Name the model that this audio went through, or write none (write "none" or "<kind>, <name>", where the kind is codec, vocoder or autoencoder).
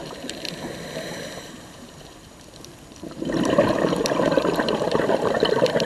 vocoder, BigVGAN v2